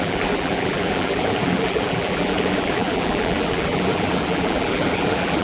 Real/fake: fake